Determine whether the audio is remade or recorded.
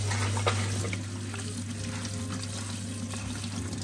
recorded